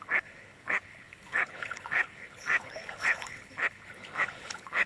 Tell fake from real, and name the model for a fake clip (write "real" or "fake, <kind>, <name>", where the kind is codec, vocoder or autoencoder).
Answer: fake, codec, HILCodec